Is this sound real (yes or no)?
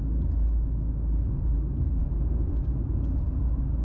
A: yes